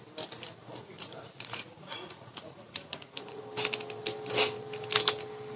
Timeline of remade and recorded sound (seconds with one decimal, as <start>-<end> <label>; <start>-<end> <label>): 0.0-0.6 recorded; 0.6-3.4 remade; 3.4-5.6 recorded